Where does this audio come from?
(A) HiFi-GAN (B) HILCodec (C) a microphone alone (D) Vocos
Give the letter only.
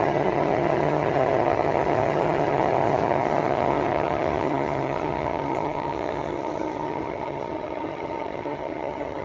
A